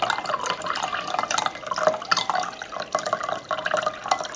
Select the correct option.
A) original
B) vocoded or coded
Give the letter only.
A